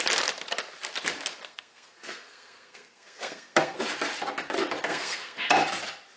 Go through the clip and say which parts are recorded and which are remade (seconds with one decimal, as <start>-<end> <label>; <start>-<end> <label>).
0.0-1.4 recorded; 1.4-3.8 remade; 3.8-4.9 recorded; 4.9-5.5 remade; 5.5-6.2 recorded